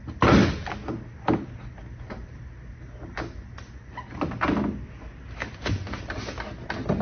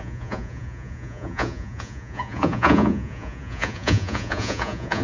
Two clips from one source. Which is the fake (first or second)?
second